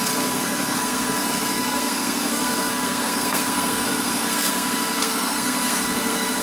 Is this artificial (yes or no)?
yes